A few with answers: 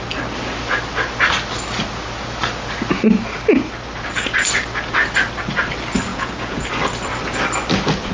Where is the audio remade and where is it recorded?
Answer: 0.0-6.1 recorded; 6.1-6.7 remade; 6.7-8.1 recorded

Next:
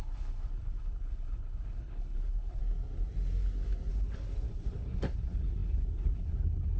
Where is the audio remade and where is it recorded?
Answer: 0.0-2.6 remade; 2.6-3.9 recorded; 3.9-6.8 remade

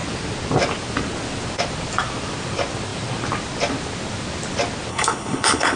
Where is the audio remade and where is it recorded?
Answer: 0.0-4.9 recorded; 4.9-5.8 remade